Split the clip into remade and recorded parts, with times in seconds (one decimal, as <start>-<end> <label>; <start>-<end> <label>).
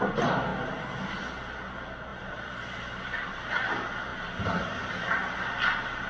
0.0-2.1 recorded; 2.1-3.6 remade; 3.6-6.1 recorded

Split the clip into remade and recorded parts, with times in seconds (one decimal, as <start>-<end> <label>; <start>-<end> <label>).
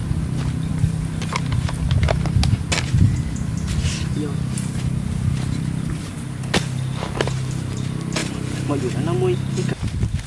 0.0-10.3 recorded